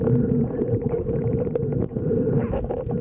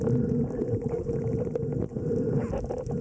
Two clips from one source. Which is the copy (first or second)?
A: first